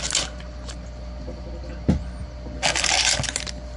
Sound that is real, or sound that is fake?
real